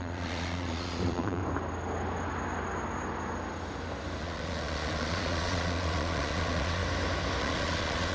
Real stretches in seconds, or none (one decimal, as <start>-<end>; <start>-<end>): 1.4-4.2; 6.8-7.4